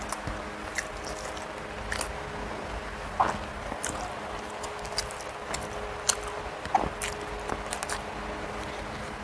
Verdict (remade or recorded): recorded